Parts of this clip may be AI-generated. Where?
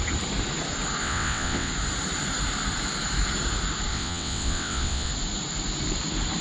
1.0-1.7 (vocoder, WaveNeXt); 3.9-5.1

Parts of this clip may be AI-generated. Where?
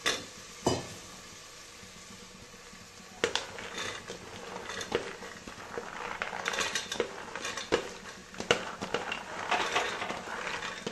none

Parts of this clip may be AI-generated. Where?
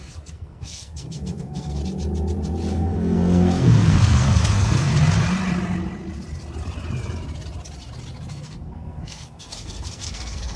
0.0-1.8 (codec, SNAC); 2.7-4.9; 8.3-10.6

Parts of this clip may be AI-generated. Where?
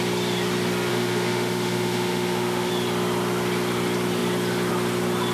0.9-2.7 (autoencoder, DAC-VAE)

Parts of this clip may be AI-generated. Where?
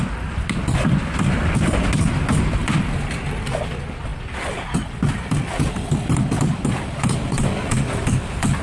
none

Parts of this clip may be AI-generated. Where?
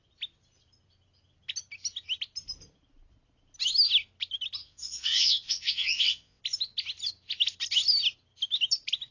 4.6-6.4 (vocoder, WaveNeXt)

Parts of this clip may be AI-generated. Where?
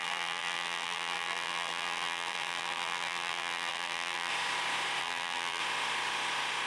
0.0-4.3 (vocoder, BigVGAN v2); 5.0-5.6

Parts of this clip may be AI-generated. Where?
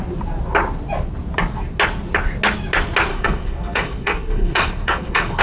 3.1-5.4 (codec, SNAC)